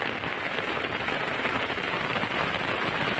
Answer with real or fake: fake